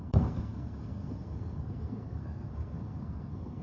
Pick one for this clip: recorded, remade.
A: remade